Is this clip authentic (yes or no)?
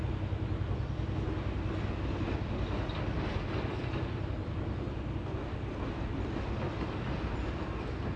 yes